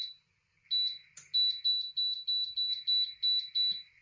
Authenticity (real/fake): real